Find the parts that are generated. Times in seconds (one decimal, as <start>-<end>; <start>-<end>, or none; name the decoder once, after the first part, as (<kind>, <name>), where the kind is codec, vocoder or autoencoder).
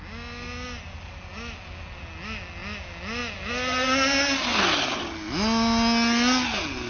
none